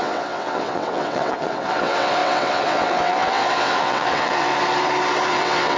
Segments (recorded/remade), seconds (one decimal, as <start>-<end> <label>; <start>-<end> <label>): 0.0-4.5 remade; 4.5-5.3 recorded; 5.3-5.8 remade